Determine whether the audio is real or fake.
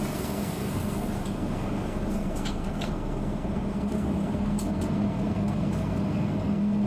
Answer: fake